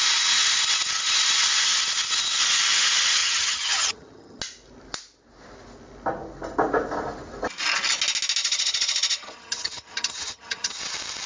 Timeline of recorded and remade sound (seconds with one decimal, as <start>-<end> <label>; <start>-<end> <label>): 0.0-3.2 recorded; 3.2-4.4 remade; 4.4-8.4 recorded; 8.4-10.8 remade; 10.8-11.3 recorded